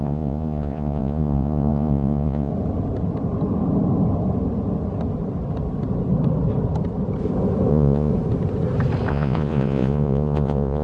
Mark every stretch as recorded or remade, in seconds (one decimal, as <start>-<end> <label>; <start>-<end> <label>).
0.0-2.5 remade; 2.5-7.7 recorded; 7.7-8.1 remade; 8.1-9.1 recorded; 9.1-10.8 remade